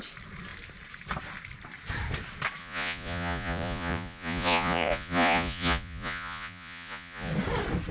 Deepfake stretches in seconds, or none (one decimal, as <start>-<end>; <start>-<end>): 2.6-7.3